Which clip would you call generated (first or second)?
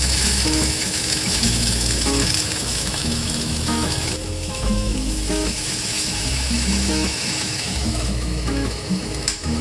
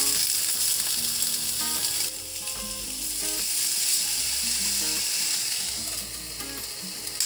first